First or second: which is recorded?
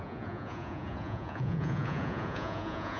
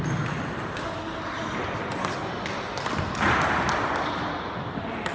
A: second